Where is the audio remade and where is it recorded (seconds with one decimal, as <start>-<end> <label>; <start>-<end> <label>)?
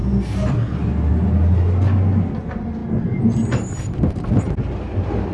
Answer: 0.0-5.3 recorded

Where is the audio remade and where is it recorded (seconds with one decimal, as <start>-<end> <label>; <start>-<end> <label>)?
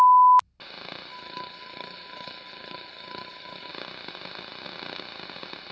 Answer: 0.0-1.1 recorded; 1.1-3.7 remade; 3.7-5.7 recorded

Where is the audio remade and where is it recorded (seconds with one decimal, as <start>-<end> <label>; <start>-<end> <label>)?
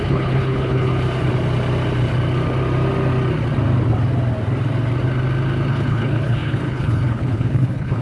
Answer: 0.0-0.9 remade; 0.9-5.7 recorded; 5.7-8.0 remade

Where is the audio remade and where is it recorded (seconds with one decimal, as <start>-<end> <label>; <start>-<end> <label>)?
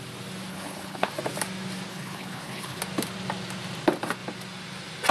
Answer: 0.0-0.5 recorded; 0.5-1.1 remade; 1.1-1.9 recorded; 1.9-2.8 remade; 2.8-5.1 recorded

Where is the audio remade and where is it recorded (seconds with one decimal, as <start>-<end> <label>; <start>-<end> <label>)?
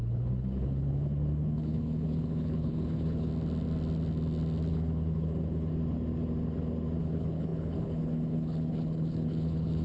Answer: 0.0-3.3 remade; 3.3-4.7 recorded; 4.7-5.7 remade; 5.7-7.0 recorded; 7.0-9.8 remade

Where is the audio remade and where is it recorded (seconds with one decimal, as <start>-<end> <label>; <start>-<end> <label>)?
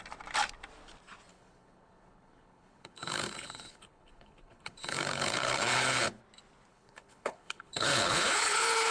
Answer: 0.0-1.3 recorded; 1.3-6.2 remade; 6.2-6.7 recorded; 6.7-8.9 remade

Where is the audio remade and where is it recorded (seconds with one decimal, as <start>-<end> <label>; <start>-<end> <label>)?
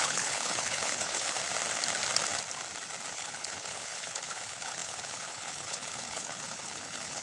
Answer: 0.0-1.4 remade; 1.4-3.1 recorded; 3.1-7.2 remade